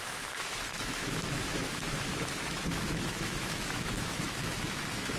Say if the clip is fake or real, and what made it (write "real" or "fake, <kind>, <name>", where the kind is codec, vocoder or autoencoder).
fake, autoencoder, DAC-VAE